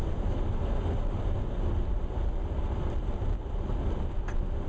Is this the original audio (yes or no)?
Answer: no